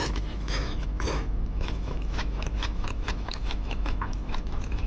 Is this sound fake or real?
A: fake